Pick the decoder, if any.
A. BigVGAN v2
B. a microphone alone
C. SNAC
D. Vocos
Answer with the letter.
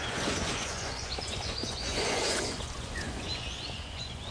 D